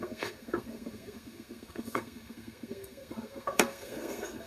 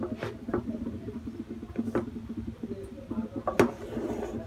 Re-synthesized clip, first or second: first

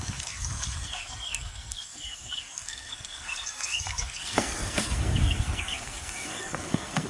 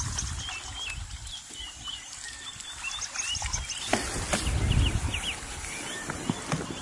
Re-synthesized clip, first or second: first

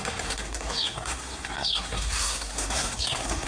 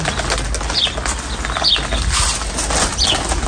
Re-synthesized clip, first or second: first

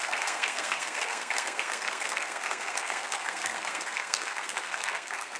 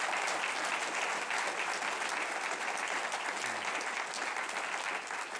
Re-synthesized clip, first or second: first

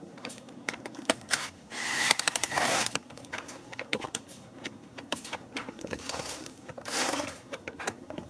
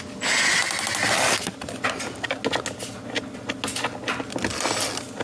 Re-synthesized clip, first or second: first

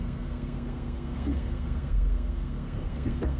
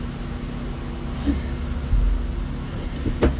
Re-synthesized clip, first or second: first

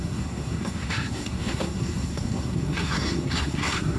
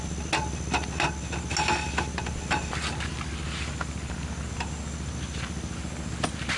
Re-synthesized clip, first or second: first